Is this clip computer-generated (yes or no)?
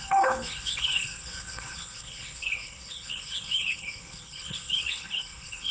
yes